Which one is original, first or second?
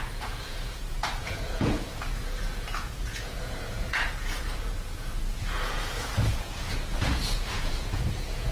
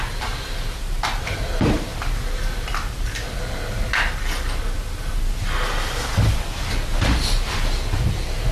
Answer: second